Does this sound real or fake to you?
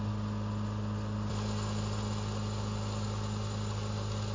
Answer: real